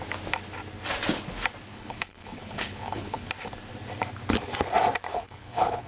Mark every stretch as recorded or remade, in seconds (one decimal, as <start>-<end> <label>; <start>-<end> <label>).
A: 0.0-1.7 recorded; 1.7-3.3 remade; 3.3-5.1 recorded; 5.1-5.9 remade

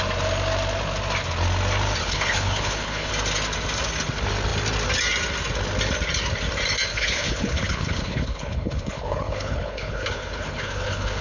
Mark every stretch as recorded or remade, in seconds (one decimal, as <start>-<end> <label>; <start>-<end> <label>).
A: 0.0-2.0 recorded; 2.0-3.1 remade; 3.1-6.9 recorded; 6.9-11.2 remade

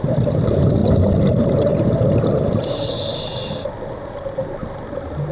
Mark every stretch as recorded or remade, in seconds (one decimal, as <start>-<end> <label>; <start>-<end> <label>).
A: 0.0-5.3 recorded

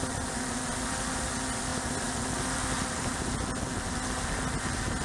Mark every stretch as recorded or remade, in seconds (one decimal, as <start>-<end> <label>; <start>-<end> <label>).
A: 0.0-5.0 recorded

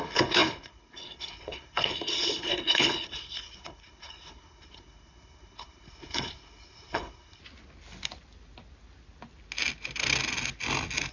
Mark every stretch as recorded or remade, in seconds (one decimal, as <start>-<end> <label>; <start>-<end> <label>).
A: 0.0-7.4 remade; 7.4-11.1 recorded

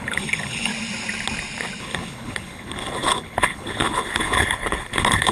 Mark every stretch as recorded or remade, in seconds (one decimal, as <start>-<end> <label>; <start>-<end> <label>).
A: 0.0-0.7 remade; 0.7-1.8 recorded; 1.8-5.3 remade